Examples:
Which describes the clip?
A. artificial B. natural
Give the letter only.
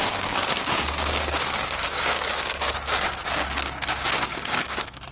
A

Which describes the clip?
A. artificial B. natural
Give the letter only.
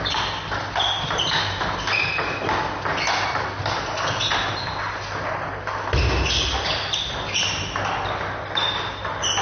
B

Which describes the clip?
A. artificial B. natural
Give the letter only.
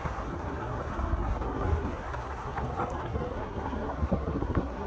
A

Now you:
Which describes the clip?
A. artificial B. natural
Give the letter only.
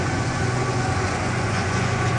A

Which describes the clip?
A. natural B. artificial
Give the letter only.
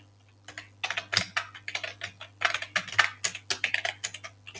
A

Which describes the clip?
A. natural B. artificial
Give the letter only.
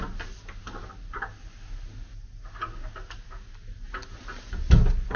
A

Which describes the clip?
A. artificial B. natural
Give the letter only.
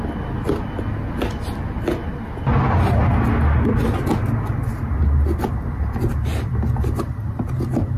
B